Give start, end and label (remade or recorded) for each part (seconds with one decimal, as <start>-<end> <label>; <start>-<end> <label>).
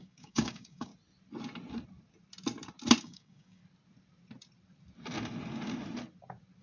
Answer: 0.0-0.9 remade; 0.9-3.0 recorded; 3.0-3.6 remade; 3.6-6.6 recorded